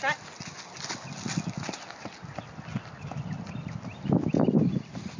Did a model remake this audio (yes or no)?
no